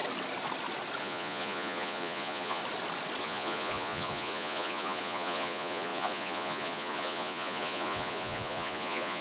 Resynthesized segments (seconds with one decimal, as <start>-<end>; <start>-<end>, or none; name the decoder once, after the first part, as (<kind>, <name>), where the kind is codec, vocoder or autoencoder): 1.0-2.6 (vocoder, Vocos); 3.2-9.2